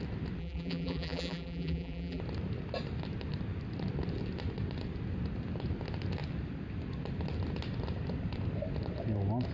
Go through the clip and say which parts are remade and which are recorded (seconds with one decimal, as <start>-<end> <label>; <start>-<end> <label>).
0.0-0.4 recorded; 0.4-2.2 remade; 2.2-9.5 recorded